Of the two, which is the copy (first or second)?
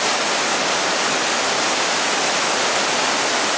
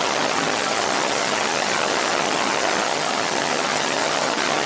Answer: second